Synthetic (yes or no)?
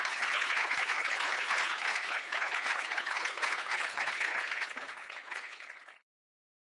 yes